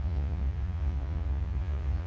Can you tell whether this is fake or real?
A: fake